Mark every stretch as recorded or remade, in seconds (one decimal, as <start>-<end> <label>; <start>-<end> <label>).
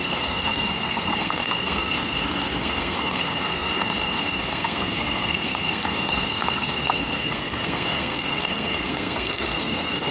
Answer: 0.0-10.1 remade